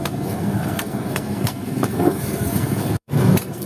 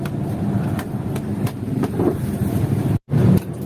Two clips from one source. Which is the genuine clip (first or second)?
second